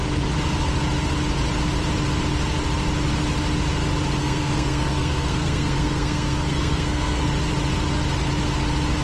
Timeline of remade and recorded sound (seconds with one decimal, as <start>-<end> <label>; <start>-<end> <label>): 0.0-4.2 recorded; 4.2-7.2 remade; 7.2-9.0 recorded